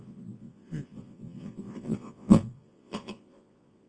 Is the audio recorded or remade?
remade